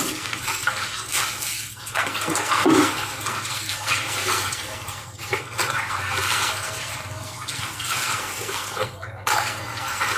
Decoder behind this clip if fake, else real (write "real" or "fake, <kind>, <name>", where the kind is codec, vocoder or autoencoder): fake, codec, SNAC